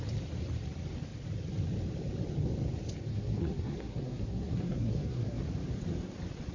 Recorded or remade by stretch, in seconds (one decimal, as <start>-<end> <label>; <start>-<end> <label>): 0.0-3.1 recorded; 3.1-5.4 remade; 5.4-6.5 recorded